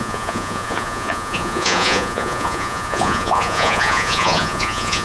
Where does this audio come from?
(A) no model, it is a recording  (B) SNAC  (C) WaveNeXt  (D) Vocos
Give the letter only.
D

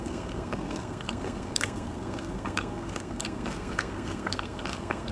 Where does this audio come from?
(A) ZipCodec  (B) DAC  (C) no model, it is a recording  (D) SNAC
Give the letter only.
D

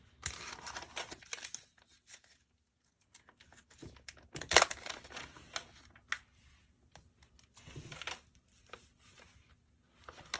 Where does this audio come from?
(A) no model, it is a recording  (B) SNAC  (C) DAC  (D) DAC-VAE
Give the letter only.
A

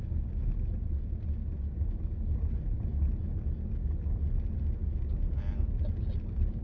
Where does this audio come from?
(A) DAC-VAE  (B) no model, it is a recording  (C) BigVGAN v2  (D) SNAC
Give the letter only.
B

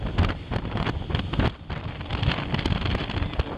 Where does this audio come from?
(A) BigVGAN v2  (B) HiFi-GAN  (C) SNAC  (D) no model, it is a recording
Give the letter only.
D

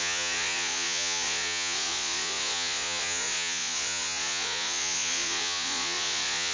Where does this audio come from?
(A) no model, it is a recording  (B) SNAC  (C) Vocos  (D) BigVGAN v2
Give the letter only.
C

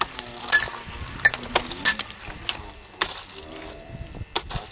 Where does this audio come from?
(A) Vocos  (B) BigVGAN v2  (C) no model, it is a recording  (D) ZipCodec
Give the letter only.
C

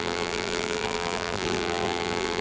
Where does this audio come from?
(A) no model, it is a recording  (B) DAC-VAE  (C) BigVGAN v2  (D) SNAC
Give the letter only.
C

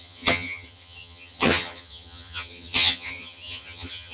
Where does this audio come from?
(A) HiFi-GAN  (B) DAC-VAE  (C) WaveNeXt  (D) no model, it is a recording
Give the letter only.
A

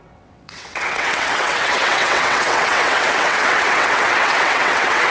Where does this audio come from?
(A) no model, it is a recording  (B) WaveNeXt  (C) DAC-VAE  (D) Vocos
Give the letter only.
B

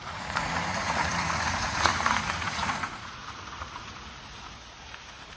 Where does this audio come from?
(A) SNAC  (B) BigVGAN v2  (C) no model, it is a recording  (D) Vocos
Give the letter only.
D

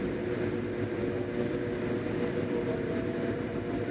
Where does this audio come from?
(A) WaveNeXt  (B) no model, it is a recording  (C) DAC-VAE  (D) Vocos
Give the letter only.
B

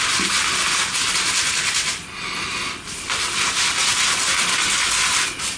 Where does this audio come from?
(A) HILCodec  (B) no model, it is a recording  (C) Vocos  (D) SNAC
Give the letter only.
B